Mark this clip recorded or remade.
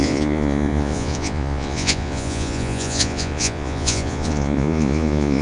remade